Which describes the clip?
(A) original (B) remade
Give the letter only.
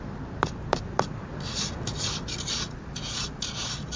A